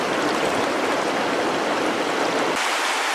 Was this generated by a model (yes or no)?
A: no